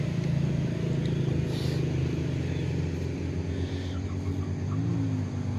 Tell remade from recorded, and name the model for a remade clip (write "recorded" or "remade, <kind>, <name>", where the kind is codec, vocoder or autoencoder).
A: recorded